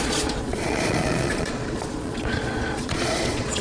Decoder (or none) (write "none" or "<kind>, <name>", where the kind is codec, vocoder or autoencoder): vocoder, Vocos